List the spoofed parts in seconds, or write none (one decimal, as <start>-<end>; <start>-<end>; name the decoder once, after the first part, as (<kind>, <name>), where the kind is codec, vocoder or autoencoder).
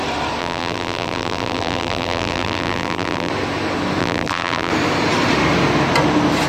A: 0.4-3.3 (vocoder, BigVGAN v2); 4.0-4.7